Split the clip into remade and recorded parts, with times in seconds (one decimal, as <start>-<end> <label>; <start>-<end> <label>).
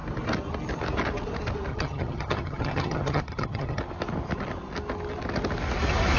0.0-1.7 recorded; 1.7-3.8 remade; 3.8-6.2 recorded